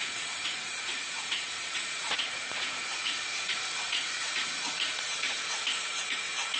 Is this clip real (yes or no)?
no